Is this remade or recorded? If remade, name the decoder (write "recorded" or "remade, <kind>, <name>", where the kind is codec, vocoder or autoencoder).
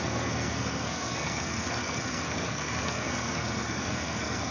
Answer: remade, codec, SNAC